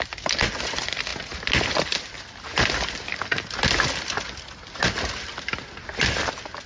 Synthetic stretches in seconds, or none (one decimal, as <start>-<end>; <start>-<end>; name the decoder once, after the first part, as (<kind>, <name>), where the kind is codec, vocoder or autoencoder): none

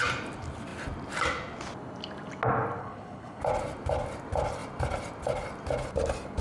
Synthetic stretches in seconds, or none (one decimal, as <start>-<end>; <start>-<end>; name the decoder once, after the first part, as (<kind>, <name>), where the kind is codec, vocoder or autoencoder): 2.8-3.4 (codec, HILCodec)

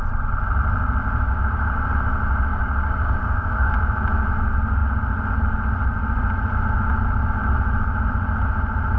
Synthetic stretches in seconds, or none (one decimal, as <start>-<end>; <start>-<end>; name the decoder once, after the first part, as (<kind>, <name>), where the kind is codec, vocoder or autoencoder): 2.5-3.7 (codec, DAC)

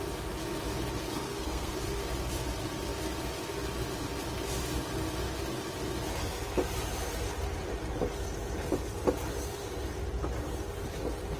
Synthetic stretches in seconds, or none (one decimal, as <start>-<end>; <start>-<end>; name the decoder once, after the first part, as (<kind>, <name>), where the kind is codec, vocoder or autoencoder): 1.1-1.7 (codec, SNAC)

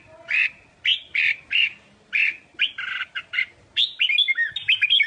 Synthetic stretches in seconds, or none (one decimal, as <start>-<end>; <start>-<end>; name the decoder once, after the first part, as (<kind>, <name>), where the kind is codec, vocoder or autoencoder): none

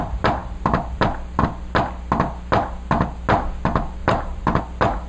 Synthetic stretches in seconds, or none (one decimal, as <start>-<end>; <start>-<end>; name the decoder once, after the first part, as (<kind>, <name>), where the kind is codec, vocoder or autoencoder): 4.0-4.6 (vocoder, BigVGAN v2)

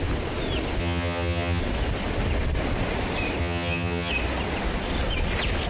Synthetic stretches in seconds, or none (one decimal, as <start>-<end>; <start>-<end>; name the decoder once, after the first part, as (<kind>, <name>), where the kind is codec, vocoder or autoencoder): 0.8-1.6 (vocoder, HiFi-GAN); 3.4-4.1

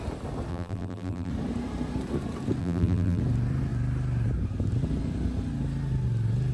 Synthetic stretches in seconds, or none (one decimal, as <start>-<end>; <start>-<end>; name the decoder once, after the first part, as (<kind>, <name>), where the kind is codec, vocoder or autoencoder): 0.5-1.3 (vocoder, BigVGAN v2); 2.6-3.2